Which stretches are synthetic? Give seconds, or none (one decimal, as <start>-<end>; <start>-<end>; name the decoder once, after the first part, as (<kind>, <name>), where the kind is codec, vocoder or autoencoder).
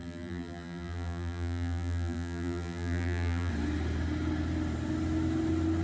0.0-3.5 (vocoder, BigVGAN v2)